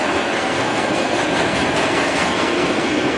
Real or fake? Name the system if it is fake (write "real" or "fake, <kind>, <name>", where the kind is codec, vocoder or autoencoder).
fake, codec, SNAC